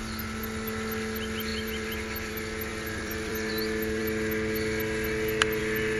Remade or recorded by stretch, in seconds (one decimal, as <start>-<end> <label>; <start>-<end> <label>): 0.0-1.5 recorded; 1.5-2.3 remade; 2.3-2.7 recorded; 2.7-3.5 remade; 3.5-6.0 recorded